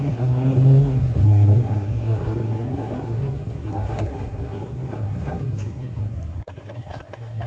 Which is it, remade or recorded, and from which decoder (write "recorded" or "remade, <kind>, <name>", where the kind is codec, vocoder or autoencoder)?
remade, codec, SNAC